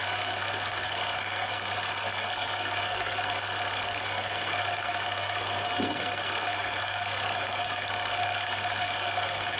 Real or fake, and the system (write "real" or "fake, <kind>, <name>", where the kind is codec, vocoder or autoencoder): fake, codec, SNAC